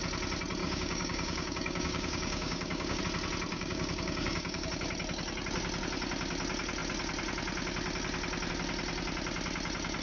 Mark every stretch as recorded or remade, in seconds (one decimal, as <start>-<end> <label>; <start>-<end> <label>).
0.0-0.6 recorded; 0.6-3.0 remade; 3.0-3.5 recorded; 3.5-4.7 remade; 4.7-10.0 recorded